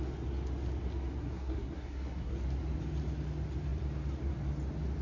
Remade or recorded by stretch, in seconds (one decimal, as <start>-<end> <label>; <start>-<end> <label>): 0.0-1.2 recorded; 1.2-2.4 remade; 2.4-5.0 recorded